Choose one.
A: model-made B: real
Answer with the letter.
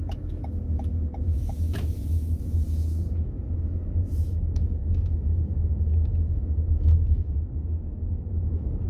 A